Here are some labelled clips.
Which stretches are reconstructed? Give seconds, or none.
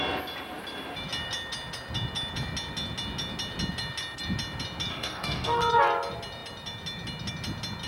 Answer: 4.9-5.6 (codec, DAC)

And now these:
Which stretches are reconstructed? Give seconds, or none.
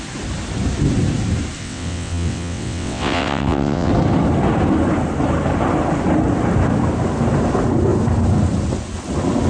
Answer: 1.6-3.9 (vocoder, WaveNeXt)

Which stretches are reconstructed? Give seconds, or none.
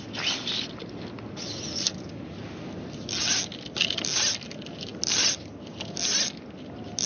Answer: none